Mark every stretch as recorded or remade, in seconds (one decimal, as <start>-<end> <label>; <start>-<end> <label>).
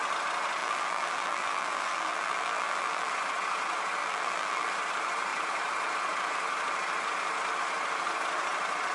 0.0-0.6 recorded; 0.6-3.1 remade; 3.1-4.0 recorded; 4.0-4.7 remade; 4.7-8.9 recorded